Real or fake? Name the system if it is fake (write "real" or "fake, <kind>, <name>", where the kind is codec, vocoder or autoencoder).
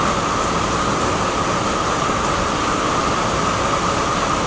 fake, vocoder, BigVGAN v2